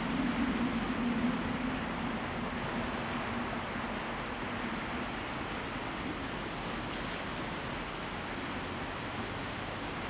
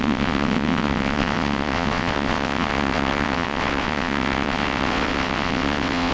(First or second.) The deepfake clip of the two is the second